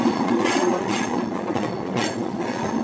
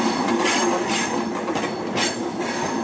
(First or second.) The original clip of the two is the second